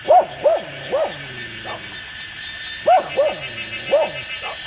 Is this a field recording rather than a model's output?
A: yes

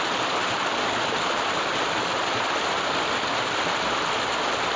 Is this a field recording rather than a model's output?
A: yes